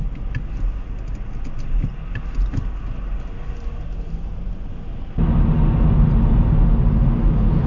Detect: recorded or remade recorded